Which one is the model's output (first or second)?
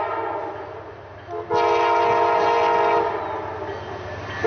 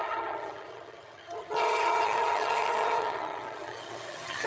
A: second